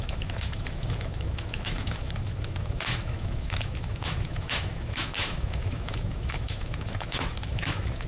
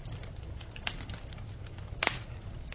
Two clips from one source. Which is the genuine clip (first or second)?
second